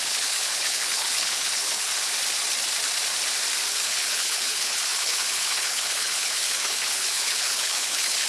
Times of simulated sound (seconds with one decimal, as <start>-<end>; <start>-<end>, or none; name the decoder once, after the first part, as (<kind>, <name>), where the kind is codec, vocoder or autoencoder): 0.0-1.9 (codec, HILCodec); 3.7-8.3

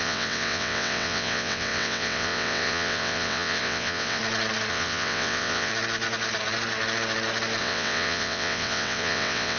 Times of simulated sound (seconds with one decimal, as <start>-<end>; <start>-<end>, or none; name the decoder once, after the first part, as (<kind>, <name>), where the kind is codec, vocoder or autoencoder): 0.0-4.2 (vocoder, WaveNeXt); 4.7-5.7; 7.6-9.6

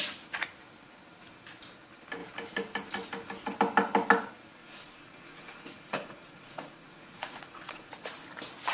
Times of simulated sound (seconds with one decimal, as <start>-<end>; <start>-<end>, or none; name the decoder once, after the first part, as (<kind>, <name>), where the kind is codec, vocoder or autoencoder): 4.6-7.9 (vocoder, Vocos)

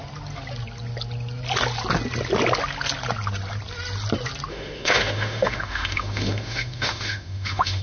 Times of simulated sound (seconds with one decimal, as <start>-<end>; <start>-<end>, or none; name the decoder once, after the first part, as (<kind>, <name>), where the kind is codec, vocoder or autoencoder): 4.5-7.8 (autoencoder, DAC-VAE)

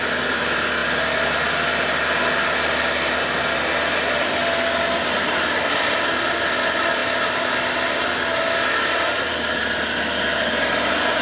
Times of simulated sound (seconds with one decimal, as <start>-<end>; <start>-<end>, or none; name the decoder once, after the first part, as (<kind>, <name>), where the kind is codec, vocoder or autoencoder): none